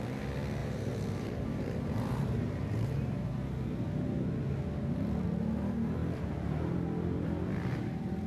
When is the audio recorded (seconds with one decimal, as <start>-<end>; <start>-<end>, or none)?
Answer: 0.0-0.6; 3.3-8.3